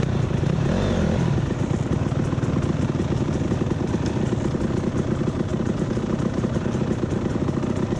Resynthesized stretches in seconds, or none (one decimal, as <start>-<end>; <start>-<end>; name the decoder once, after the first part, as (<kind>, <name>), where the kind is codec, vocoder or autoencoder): 5.5-7.5 (vocoder, BigVGAN v2)